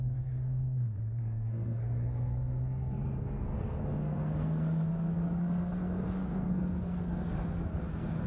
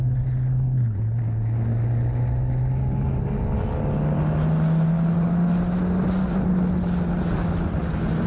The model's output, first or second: first